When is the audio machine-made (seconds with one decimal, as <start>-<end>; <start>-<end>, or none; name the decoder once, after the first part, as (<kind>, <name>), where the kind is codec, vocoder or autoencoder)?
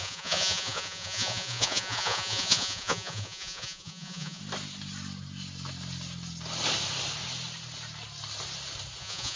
0.0-4.4 (vocoder, Vocos); 9.0-9.4